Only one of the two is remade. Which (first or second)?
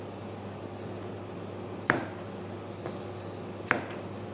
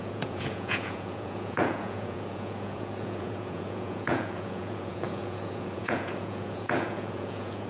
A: second